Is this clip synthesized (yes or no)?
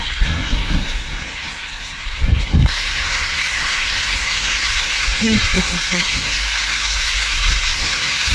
yes